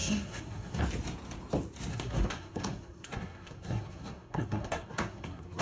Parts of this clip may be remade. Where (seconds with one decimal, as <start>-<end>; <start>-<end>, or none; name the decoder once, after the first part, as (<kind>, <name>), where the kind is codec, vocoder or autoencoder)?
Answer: 0.0-0.8 (codec, SNAC); 1.9-5.6